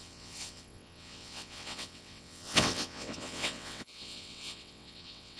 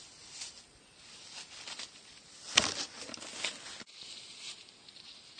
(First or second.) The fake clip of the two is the first